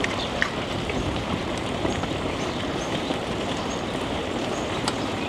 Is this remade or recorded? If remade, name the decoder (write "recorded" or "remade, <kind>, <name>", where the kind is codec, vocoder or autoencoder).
remade, vocoder, BigVGAN v2